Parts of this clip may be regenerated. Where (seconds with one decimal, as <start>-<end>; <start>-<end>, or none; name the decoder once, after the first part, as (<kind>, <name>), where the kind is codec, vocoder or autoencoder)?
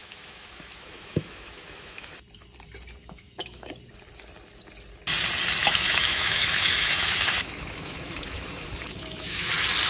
0.0-2.1 (autoencoder, DAC-VAE); 3.0-3.7; 5.6-9.5